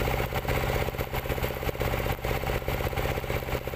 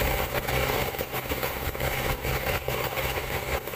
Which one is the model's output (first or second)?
second